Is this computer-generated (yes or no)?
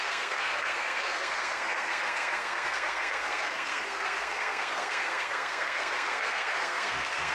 yes